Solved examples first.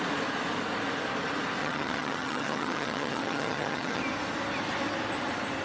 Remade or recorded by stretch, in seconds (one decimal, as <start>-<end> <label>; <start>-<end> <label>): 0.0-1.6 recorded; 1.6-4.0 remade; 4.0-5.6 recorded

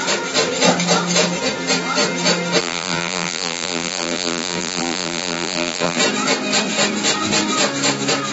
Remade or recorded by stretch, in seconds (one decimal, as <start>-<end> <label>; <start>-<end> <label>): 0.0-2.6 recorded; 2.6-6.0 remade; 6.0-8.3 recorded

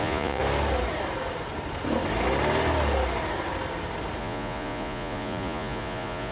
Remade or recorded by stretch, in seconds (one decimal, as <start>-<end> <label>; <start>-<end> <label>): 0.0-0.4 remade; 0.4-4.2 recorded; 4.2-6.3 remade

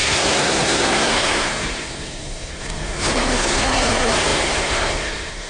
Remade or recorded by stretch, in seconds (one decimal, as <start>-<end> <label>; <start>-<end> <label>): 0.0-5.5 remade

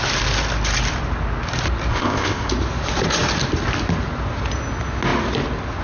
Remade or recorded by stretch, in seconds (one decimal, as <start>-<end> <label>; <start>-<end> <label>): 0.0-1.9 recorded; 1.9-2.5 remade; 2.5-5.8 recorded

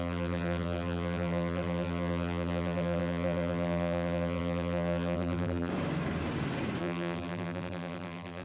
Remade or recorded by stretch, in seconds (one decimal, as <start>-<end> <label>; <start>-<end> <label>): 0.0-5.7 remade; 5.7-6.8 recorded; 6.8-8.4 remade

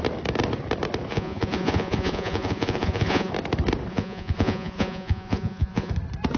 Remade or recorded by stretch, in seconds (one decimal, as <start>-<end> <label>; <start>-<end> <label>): 0.0-1.1 recorded; 1.1-3.3 remade; 3.3-3.9 recorded; 3.9-5.9 remade; 5.9-6.4 recorded